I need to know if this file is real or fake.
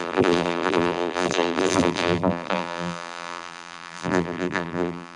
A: fake